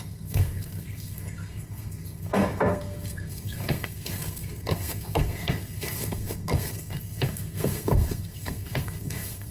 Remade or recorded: remade